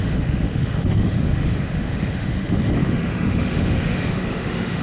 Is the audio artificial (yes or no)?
yes